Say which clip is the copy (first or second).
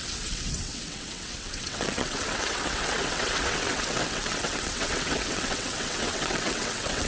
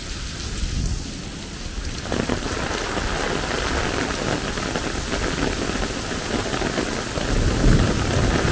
first